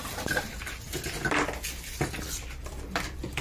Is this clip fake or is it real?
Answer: fake